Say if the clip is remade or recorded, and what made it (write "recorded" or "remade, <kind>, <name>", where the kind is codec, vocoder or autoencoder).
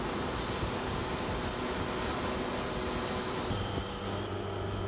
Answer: recorded